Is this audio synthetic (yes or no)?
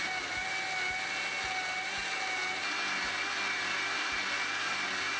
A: no